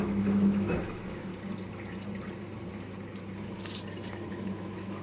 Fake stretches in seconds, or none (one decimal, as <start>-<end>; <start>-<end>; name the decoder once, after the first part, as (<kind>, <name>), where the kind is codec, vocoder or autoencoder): 0.0-1.3 (autoencoder, DAC-VAE); 4.3-5.0